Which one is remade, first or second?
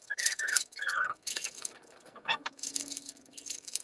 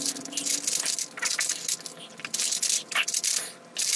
first